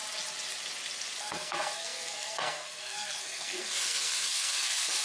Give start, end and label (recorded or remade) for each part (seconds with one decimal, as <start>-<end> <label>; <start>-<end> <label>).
0.0-1.2 recorded; 1.2-5.0 remade